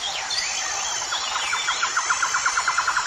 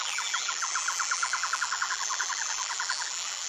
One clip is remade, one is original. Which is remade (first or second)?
second